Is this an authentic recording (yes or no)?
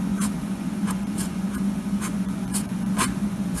no